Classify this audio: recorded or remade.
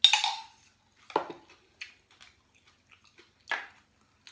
recorded